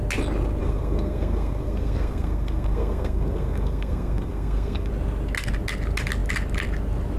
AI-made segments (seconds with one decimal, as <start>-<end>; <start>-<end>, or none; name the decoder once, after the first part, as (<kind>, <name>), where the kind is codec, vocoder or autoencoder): 0.6-4.9 (codec, SNAC)